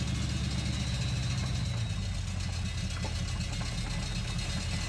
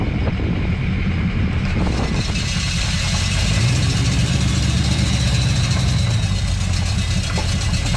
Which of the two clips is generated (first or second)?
second